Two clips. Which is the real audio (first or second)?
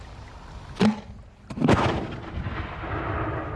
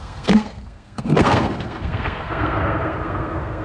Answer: first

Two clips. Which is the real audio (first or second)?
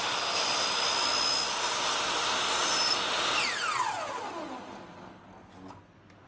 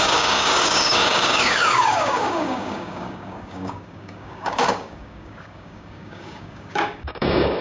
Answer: first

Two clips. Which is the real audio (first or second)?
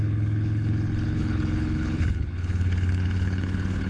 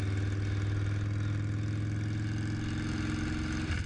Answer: second